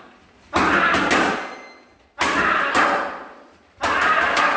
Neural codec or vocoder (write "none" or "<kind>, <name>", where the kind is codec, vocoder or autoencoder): none